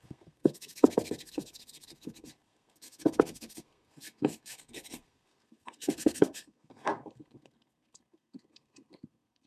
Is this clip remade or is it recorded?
remade